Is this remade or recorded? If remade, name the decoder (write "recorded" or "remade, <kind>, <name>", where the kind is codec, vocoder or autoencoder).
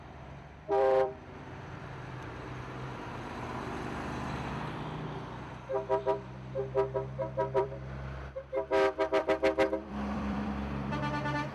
remade, vocoder, BigVGAN v2